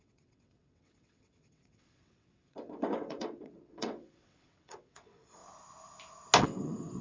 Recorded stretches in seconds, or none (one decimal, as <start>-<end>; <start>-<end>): 5.4-6.4